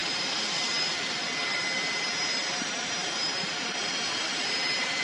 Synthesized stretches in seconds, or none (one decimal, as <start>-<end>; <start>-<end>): none

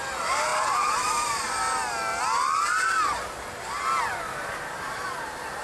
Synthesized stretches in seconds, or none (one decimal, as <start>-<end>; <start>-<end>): none

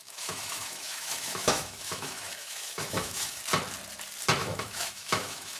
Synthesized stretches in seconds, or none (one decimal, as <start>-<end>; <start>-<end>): 0.0-3.4; 4.4-5.6

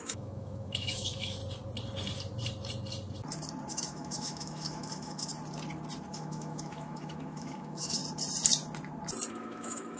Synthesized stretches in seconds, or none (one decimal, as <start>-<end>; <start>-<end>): 0.0-1.4; 3.7-5.3; 6.1-8.0; 9.3-10.0

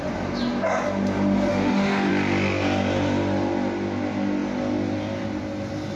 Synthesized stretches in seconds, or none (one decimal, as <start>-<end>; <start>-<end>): 1.5-2.1